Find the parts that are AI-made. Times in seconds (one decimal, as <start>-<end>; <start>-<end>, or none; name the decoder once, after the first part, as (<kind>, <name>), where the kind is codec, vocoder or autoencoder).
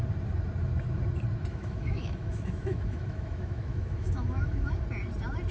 1.5-4.8 (autoencoder, DAC-VAE)